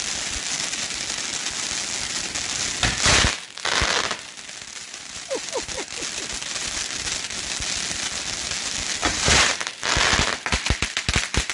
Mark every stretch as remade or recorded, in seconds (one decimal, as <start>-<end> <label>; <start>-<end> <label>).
0.0-4.8 recorded; 4.8-5.4 remade; 5.4-9.0 recorded; 9.0-9.6 remade; 9.6-11.5 recorded